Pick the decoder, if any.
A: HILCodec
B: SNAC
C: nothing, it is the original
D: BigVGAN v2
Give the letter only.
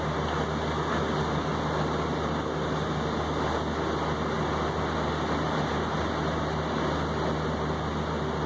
C